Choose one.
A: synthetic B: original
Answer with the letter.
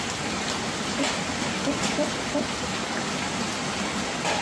B